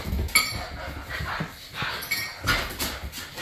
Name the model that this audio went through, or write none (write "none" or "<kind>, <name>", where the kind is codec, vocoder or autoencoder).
none